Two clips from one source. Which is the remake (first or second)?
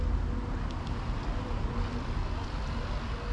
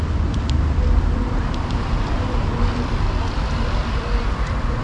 second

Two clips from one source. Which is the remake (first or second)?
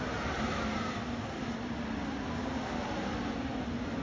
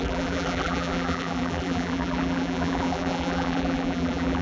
second